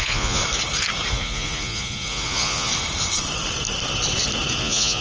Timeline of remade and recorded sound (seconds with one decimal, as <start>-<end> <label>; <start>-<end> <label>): 0.0-0.4 remade; 0.4-1.1 recorded; 1.1-2.7 remade; 2.7-4.6 recorded; 4.6-5.0 remade